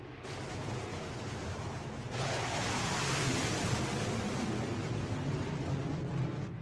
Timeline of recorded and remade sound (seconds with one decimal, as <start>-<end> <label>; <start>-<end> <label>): 0.0-0.9 recorded; 0.9-1.9 remade; 1.9-6.6 recorded